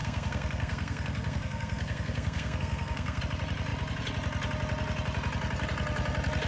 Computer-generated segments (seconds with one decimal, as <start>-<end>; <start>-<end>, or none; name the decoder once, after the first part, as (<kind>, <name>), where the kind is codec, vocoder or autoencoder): 0.0-3.2 (codec, SNAC)